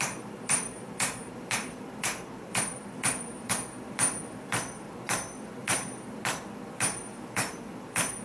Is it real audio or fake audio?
fake